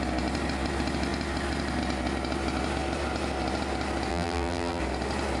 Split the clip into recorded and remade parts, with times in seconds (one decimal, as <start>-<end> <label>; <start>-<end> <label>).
0.0-4.1 recorded; 4.1-4.8 remade; 4.8-5.4 recorded